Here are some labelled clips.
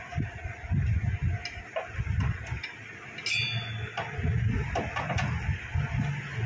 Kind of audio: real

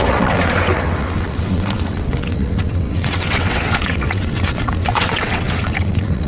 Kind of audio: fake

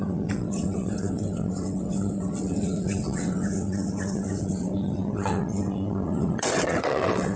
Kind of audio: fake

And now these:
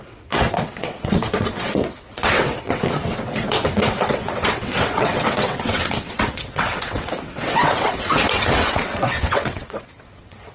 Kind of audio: fake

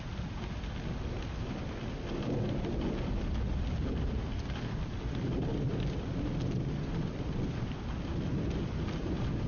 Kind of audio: real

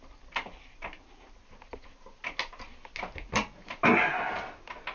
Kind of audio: real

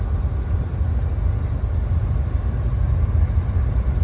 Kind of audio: real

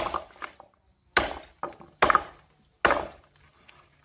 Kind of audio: real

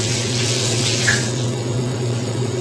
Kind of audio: fake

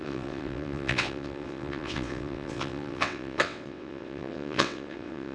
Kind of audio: fake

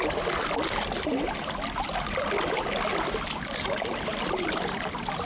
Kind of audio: real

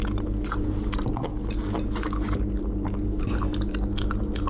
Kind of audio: real